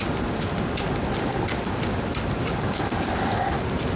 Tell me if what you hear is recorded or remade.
recorded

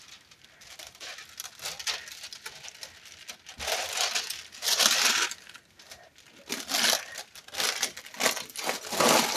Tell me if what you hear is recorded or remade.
recorded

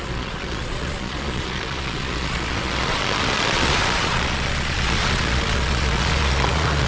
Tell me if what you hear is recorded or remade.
remade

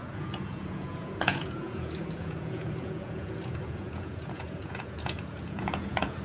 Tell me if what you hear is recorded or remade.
remade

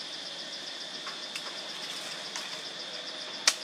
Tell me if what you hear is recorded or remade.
recorded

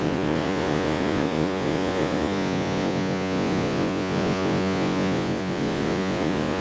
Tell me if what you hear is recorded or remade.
remade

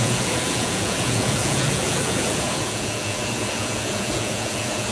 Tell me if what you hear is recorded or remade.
remade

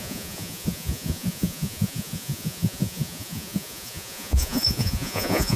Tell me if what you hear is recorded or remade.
remade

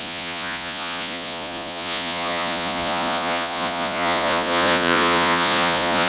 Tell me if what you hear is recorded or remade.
remade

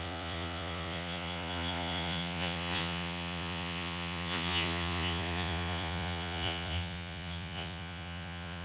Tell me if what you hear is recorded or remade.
remade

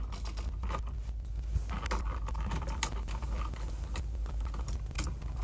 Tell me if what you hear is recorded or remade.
recorded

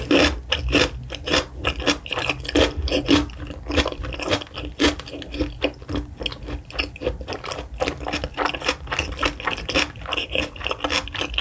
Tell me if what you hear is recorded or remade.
recorded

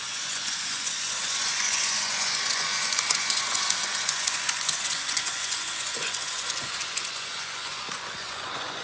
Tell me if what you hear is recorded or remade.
remade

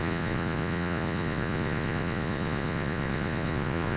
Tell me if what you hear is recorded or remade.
remade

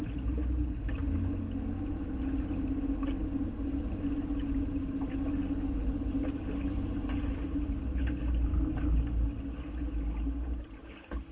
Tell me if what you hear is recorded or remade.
recorded